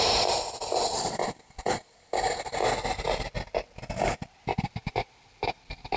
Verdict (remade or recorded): recorded